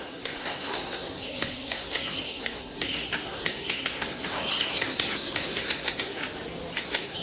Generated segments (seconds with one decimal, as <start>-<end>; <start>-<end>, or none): 0.0-6.2; 6.8-7.2